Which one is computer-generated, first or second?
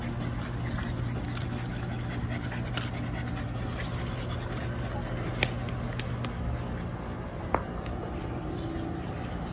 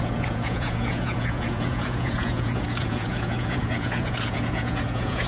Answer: second